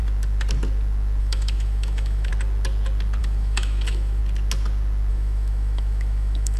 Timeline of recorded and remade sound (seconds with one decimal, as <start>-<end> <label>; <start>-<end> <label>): 0.0-1.2 recorded; 1.2-2.3 remade; 2.3-3.2 recorded; 3.2-4.2 remade; 4.2-5.1 recorded; 5.1-6.6 remade